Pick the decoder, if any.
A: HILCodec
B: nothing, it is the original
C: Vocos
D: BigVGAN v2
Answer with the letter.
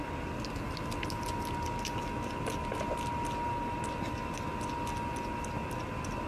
B